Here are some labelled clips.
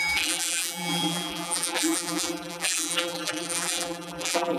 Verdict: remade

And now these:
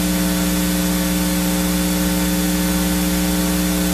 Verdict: recorded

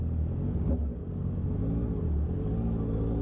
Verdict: recorded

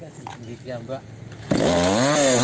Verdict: recorded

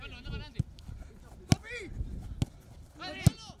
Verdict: recorded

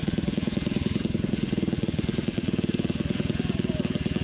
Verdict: remade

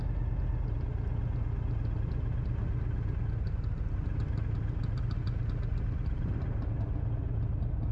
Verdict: recorded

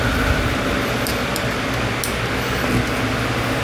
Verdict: recorded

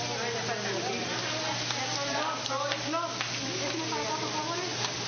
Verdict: recorded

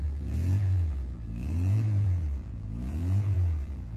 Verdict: remade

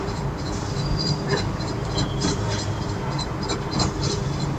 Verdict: remade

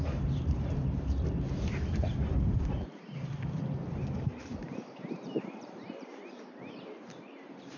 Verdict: remade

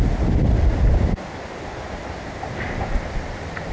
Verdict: remade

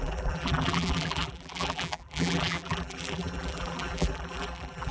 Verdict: remade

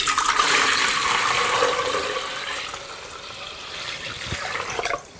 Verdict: remade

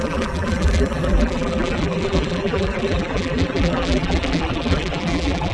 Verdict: remade